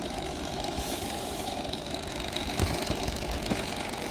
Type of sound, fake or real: fake